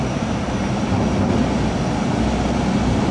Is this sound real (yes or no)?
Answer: yes